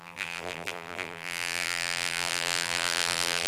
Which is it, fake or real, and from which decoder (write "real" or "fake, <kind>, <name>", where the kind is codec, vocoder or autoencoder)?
fake, vocoder, BigVGAN v2